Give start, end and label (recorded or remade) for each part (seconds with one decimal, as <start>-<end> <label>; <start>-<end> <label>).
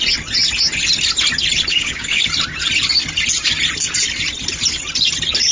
0.0-1.7 recorded; 1.7-2.2 remade; 2.2-5.5 recorded